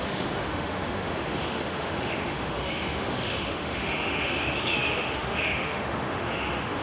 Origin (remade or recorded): remade